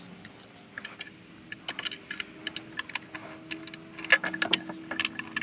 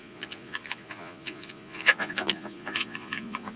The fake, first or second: second